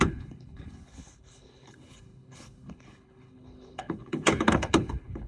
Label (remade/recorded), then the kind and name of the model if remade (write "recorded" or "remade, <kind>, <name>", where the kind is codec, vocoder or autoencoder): remade, codec, HILCodec